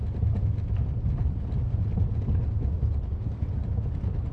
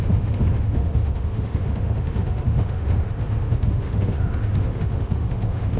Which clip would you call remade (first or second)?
second